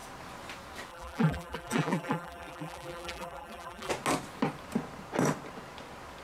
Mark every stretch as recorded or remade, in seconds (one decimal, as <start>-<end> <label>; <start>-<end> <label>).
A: 0.0-0.9 recorded; 0.9-3.9 remade; 3.9-6.2 recorded